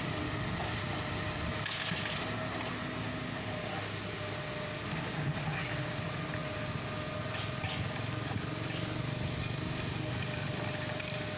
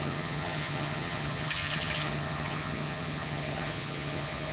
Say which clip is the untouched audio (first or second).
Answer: first